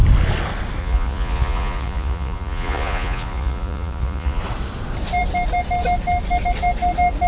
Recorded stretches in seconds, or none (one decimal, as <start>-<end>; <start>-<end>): 0.0-0.8; 4.4-7.3